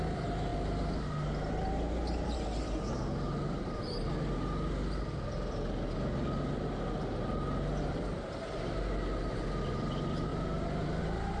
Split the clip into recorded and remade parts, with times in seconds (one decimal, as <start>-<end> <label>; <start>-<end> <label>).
0.0-11.4 recorded